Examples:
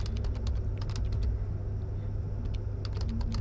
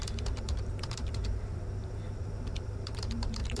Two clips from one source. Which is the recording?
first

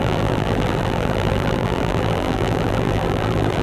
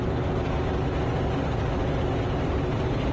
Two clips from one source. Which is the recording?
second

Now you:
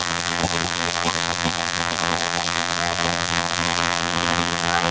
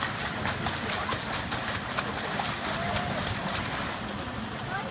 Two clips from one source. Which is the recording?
second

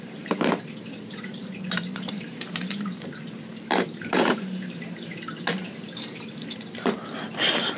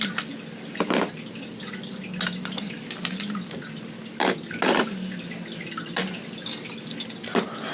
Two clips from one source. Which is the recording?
second